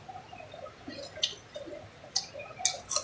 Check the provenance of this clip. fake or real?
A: real